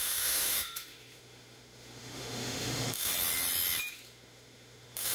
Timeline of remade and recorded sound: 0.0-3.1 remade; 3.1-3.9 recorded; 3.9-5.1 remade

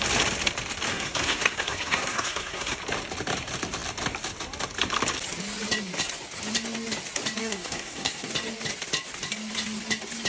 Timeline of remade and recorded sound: 0.0-0.9 recorded; 0.9-2.8 remade; 2.8-7.4 recorded; 7.4-8.3 remade; 8.3-10.3 recorded

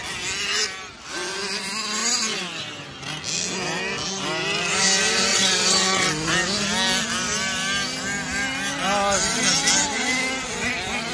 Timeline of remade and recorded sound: 0.0-5.3 recorded; 5.3-6.1 remade; 6.1-11.1 recorded

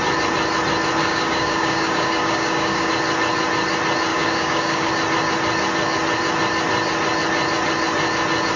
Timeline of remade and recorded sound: 0.0-1.0 recorded; 1.0-2.9 remade; 2.9-4.1 recorded; 4.1-4.9 remade; 4.9-8.6 recorded

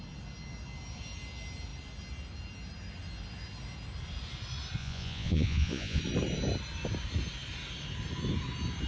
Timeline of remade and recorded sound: 0.0-4.8 recorded; 4.8-6.0 remade; 6.0-8.9 recorded

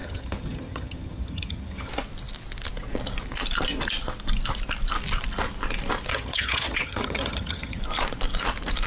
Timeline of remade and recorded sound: 0.0-1.9 remade; 1.9-6.1 recorded; 6.1-7.8 remade; 7.8-8.9 recorded

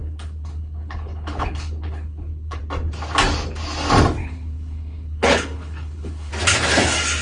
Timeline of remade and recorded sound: 0.0-2.6 remade; 2.6-4.2 recorded; 4.2-6.3 remade; 6.3-7.2 recorded